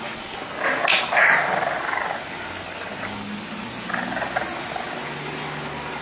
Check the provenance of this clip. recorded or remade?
recorded